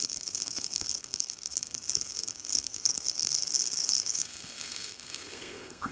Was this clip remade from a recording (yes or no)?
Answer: yes